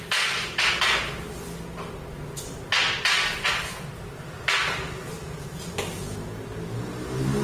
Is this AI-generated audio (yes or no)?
no